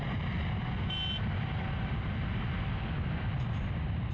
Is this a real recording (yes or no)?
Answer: yes